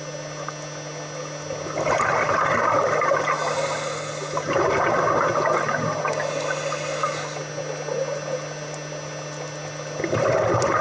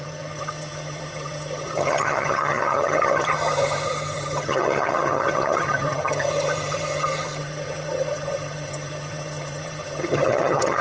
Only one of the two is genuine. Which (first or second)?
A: first